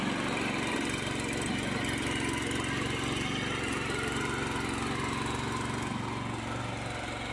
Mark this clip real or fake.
real